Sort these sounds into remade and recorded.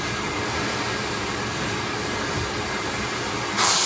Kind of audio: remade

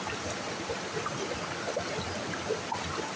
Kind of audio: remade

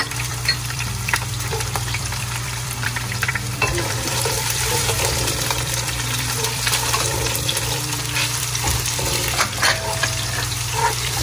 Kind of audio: remade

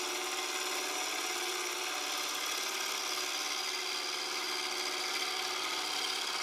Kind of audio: recorded